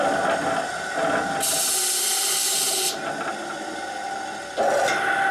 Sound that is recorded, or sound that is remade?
recorded